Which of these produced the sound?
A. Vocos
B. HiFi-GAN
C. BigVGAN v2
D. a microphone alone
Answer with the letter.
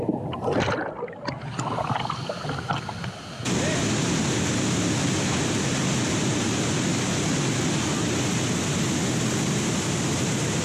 D